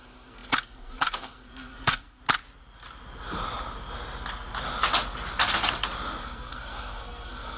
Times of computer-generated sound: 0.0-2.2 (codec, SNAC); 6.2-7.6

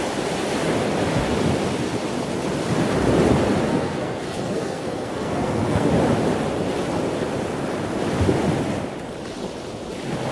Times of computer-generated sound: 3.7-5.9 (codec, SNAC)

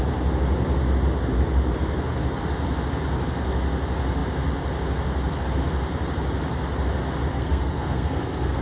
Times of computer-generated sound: 7.3-8.6 (codec, SNAC)